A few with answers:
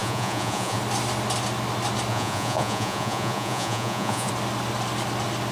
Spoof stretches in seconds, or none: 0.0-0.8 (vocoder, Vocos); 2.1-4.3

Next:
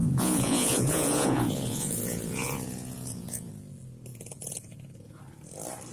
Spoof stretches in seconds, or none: 0.0-3.5 (vocoder, Vocos); 4.1-5.2

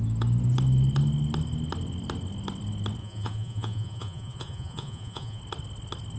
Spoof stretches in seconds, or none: 3.0-5.4 (vocoder, Vocos)